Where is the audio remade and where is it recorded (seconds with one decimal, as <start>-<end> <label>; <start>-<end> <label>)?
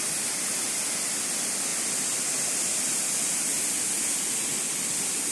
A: 0.0-5.3 recorded